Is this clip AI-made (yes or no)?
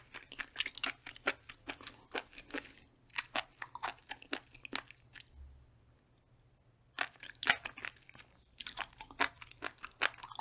no